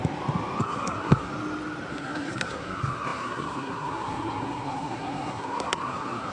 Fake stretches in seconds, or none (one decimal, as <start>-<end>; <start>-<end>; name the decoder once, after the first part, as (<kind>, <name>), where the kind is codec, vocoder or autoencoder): 0.6-1.3 (codec, SNAC); 1.9-6.3